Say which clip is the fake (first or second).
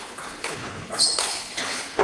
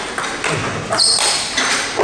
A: first